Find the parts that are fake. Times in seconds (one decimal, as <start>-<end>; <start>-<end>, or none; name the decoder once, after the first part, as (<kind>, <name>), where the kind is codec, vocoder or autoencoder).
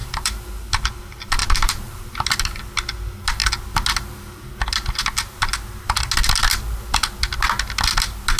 0.0-0.6 (vocoder, BigVGAN v2); 1.4-2.0